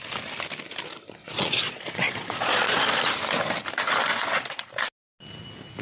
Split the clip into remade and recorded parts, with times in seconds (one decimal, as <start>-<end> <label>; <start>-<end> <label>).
0.0-1.2 recorded; 1.2-2.8 remade; 2.8-4.1 recorded; 4.1-4.7 remade; 4.7-5.8 recorded